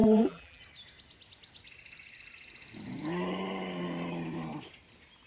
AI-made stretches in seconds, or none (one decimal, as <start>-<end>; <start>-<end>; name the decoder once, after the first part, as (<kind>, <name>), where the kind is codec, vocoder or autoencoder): 0.0-0.6 (vocoder, BigVGAN v2)